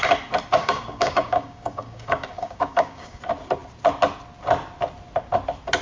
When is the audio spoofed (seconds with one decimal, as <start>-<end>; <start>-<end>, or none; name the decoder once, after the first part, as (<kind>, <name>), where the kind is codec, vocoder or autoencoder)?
0.6-3.2 (codec, DAC)